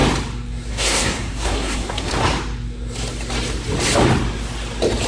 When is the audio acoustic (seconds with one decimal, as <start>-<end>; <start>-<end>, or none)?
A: 0.0-0.7; 2.1-5.1